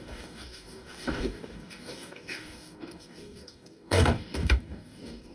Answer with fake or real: fake